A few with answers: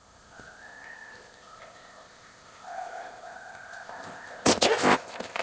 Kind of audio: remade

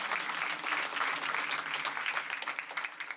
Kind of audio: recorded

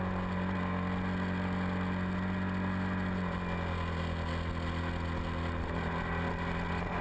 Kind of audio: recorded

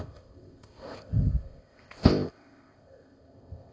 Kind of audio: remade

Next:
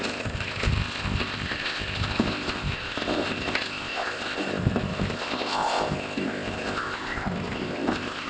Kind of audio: remade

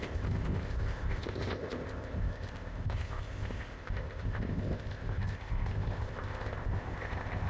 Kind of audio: remade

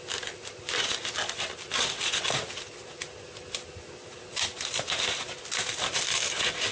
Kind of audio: recorded